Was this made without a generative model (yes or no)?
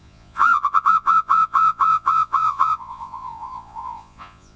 no